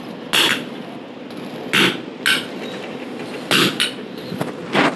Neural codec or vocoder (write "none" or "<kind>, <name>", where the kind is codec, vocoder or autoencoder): none